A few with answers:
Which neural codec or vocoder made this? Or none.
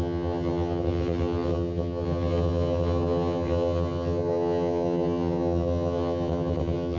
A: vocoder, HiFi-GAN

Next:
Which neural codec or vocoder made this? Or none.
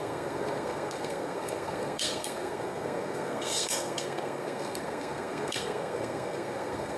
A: codec, SNAC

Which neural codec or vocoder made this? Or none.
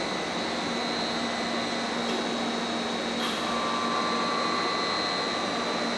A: none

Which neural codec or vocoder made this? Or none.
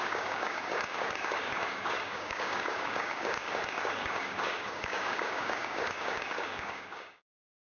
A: codec, DAC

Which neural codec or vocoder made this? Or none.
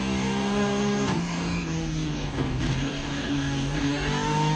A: codec, DAC